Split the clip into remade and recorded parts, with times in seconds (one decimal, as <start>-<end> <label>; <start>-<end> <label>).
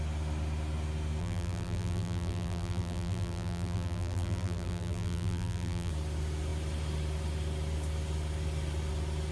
0.0-1.2 recorded; 1.2-5.9 remade; 5.9-9.3 recorded